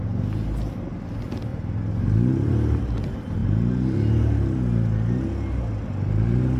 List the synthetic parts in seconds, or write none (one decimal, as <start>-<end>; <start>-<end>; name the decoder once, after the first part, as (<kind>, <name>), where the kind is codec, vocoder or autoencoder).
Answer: 1.5-2.8 (vocoder, BigVGAN v2); 3.4-4.2